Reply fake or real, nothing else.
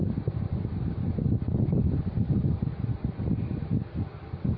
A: real